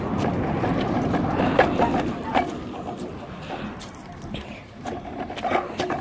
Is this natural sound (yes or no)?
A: no